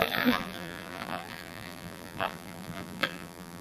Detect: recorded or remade remade